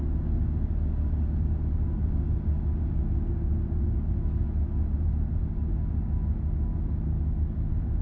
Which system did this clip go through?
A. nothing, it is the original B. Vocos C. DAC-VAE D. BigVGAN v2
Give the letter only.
A